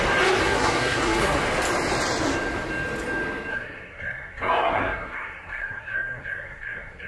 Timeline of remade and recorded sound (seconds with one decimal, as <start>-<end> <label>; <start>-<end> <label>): 0.0-0.4 recorded; 0.4-1.4 remade; 1.4-3.5 recorded; 3.5-7.1 remade